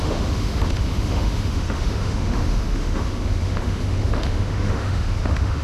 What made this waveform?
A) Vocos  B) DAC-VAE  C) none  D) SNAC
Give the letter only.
B